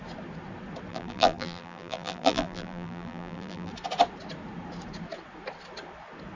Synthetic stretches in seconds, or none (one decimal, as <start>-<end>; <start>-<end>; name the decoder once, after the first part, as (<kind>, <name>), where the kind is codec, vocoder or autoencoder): 0.9-3.7 (vocoder, BigVGAN v2)